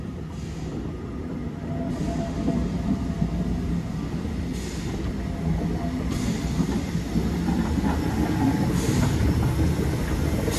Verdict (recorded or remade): recorded